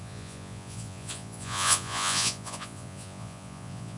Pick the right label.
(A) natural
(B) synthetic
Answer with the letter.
B